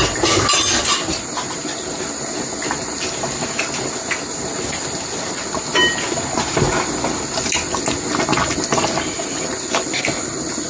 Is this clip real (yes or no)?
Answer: yes